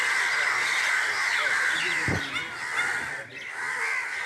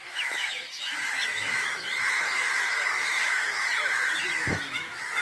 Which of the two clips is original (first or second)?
first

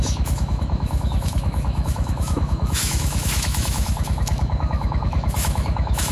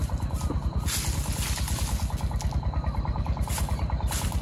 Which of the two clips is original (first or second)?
second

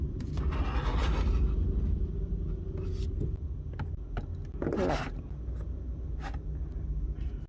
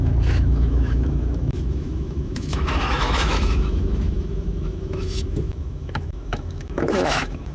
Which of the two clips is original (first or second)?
first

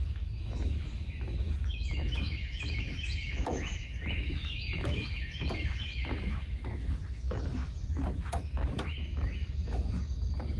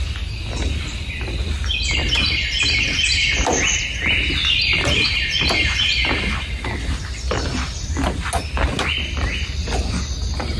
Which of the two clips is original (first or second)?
second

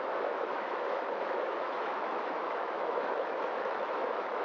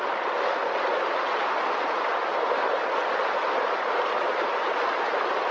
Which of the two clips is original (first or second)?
second